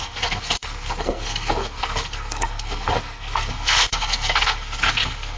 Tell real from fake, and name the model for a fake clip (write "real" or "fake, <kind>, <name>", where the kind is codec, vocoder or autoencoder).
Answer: fake, codec, SNAC